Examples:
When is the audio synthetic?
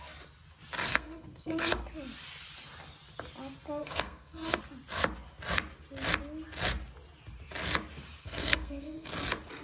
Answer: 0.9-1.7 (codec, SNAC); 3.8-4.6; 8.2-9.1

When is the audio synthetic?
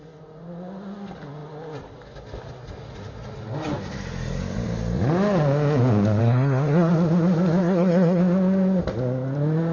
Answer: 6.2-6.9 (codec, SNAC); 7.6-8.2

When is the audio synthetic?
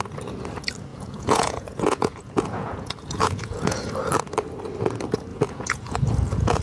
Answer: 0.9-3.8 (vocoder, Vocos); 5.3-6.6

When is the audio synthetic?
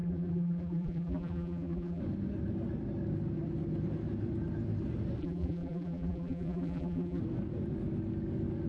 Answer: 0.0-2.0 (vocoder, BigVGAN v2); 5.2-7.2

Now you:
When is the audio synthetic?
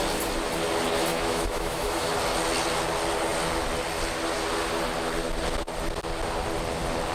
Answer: 1.1-2.1 (autoencoder, DAC-VAE)